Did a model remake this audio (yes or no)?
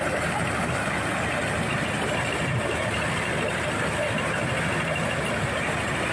no